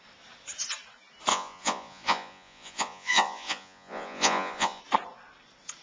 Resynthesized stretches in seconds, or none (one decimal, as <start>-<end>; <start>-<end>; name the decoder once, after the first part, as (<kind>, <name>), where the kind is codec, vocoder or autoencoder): 1.3-4.8 (vocoder, Vocos)

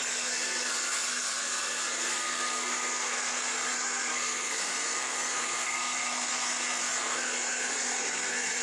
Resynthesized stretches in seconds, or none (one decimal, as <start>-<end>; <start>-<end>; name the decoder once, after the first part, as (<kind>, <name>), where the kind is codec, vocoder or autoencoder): 0.0-8.6 (codec, SNAC)

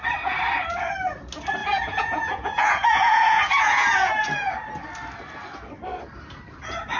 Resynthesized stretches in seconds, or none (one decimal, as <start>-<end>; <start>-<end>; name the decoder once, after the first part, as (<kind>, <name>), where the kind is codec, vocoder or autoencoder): 1.6-4.5 (vocoder, Vocos)